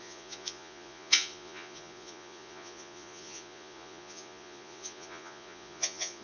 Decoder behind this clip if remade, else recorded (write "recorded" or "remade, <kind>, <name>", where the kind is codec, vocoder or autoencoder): remade, vocoder, Vocos